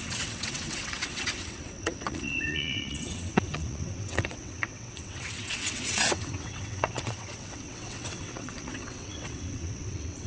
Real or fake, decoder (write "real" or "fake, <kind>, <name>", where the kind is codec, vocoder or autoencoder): fake, vocoder, WaveNeXt